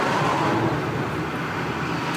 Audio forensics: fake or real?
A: real